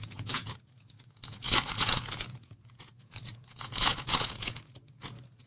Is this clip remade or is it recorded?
remade